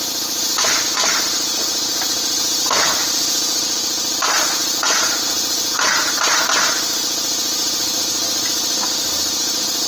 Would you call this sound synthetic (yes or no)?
no